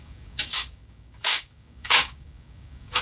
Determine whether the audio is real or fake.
fake